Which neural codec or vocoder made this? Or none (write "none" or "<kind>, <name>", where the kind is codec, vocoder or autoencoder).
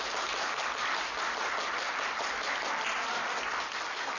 none